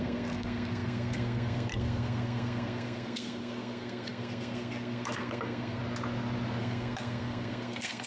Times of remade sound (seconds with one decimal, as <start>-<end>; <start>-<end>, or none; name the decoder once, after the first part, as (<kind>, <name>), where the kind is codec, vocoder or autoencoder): 0.0-5.8 (codec, SNAC); 6.6-8.1

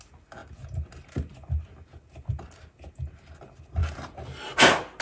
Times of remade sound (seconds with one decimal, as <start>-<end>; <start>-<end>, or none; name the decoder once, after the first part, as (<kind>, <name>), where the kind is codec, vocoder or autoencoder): none

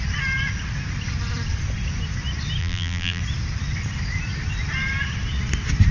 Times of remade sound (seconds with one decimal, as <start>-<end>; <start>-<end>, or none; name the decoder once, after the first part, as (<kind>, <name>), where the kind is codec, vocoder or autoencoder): 2.6-3.2 (vocoder, BigVGAN v2)

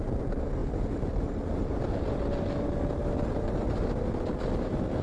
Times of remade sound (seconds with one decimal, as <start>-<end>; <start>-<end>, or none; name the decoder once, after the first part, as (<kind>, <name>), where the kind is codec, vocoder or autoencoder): none

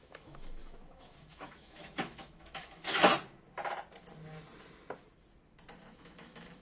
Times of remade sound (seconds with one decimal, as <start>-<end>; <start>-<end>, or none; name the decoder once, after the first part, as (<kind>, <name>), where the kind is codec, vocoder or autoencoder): 0.0-3.1 (autoencoder, DAC-VAE); 5.8-6.6

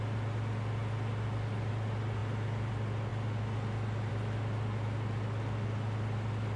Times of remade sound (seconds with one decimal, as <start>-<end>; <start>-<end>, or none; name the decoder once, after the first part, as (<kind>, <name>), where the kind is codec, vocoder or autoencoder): none

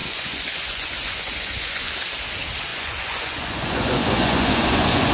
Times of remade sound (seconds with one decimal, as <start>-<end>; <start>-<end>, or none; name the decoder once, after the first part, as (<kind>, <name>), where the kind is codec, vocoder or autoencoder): 0.0-1.9 (vocoder, Vocos); 2.7-5.1

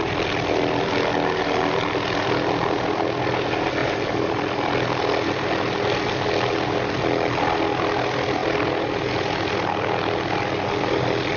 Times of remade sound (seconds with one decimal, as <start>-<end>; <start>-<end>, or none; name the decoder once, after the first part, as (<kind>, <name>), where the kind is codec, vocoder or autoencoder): none